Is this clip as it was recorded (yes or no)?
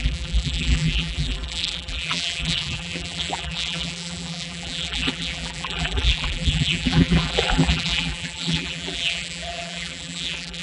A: no